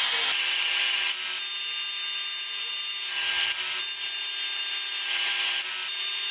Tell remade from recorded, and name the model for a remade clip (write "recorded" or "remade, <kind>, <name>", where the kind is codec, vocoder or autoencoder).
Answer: recorded